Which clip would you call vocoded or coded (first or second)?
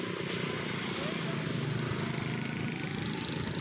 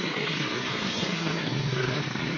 second